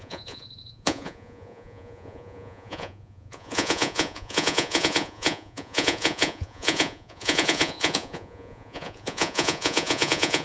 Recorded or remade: remade